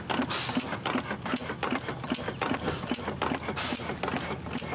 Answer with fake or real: real